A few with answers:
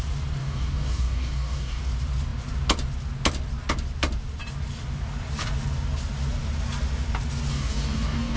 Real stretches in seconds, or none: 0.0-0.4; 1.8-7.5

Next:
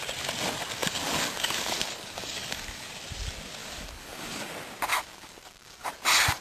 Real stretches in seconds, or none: 0.0-0.8; 2.9-3.6; 4.5-4.9; 5.9-6.4

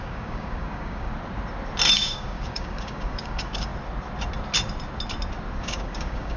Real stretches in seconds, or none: 1.1-1.9; 3.7-5.6

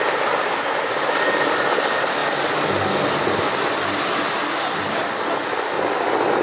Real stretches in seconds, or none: 0.0-6.4